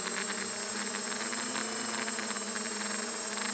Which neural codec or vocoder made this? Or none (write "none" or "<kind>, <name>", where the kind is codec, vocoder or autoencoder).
none